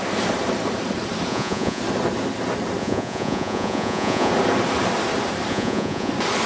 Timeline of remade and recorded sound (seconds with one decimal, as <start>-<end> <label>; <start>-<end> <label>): 0.0-1.3 recorded; 1.3-1.8 remade; 1.8-2.8 recorded; 2.8-4.3 remade; 4.3-5.5 recorded; 5.5-6.1 remade; 6.1-6.5 recorded